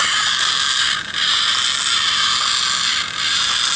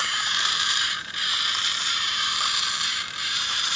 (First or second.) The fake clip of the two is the second